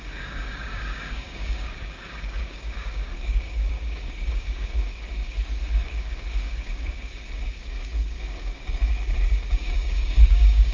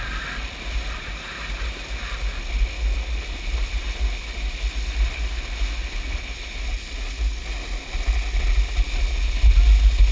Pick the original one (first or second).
second